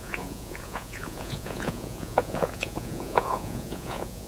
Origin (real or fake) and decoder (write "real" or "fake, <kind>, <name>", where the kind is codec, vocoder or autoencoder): fake, vocoder, Vocos